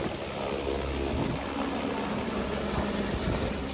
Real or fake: real